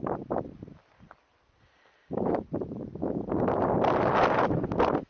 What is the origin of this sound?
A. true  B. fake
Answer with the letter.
A